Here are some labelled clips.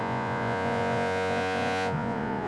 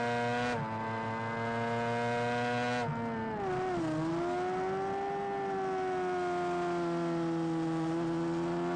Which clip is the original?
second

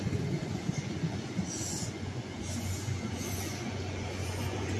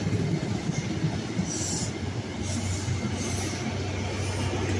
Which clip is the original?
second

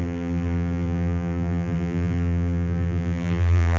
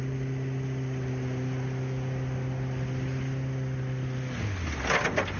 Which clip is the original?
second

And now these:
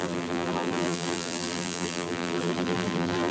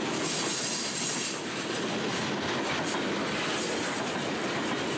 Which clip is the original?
second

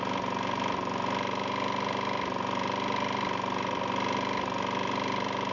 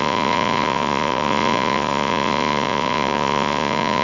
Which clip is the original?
first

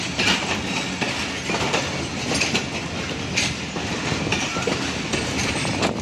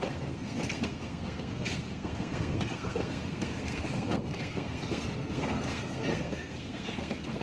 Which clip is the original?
first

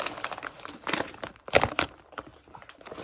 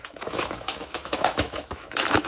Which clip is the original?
first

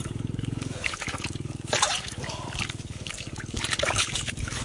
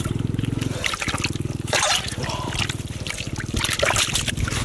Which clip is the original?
second